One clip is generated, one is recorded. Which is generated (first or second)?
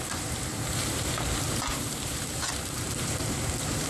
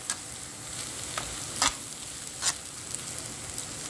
first